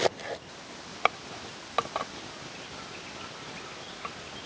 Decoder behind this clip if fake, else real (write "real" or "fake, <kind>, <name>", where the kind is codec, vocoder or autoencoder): real